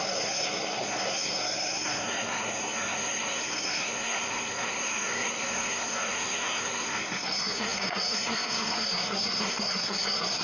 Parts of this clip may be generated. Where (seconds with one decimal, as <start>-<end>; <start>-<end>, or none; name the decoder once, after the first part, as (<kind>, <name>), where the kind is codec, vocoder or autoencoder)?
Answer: 0.0-10.4 (codec, SNAC)